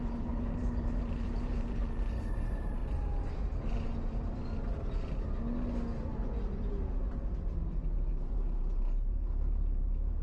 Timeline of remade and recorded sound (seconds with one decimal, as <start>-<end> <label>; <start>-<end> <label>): 0.0-2.8 remade; 2.8-7.1 recorded; 7.1-7.6 remade; 7.6-8.1 recorded; 8.1-10.2 remade